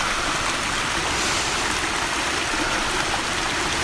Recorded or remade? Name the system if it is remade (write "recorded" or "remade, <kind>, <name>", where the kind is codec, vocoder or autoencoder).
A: recorded